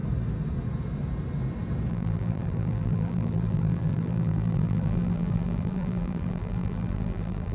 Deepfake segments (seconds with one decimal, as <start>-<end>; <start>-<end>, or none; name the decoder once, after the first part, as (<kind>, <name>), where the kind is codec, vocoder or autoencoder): 1.9-7.5 (vocoder, BigVGAN v2)